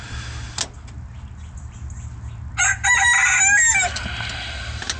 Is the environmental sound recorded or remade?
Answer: recorded